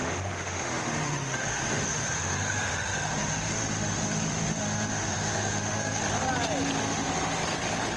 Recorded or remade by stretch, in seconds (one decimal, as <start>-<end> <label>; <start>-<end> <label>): 0.0-6.0 remade; 6.0-6.8 recorded; 6.8-7.4 remade; 7.4-8.0 recorded